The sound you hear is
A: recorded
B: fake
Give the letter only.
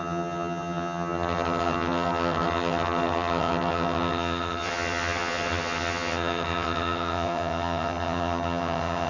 B